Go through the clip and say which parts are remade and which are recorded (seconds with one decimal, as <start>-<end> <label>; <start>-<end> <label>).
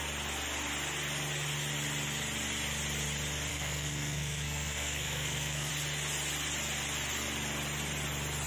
0.0-3.5 recorded; 3.5-5.7 remade; 5.7-8.5 recorded